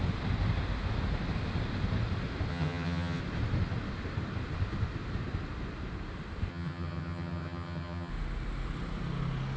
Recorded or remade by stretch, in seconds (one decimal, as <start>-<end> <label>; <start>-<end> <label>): 0.0-2.5 recorded; 2.5-3.2 remade; 3.2-6.5 recorded; 6.5-8.1 remade; 8.1-9.6 recorded